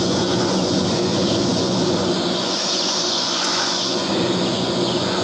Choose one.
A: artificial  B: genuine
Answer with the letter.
A